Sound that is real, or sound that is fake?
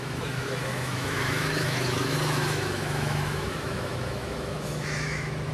fake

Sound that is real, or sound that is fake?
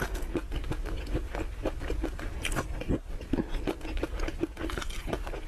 real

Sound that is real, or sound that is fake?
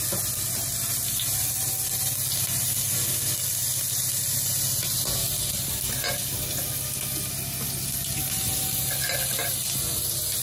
real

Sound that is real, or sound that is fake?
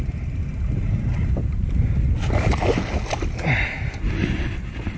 real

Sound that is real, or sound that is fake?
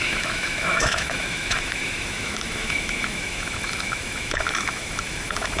fake